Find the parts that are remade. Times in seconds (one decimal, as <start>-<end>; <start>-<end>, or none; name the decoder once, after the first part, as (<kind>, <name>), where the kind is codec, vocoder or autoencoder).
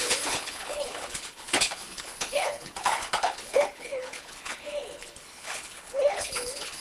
0.0-6.8 (codec, HILCodec)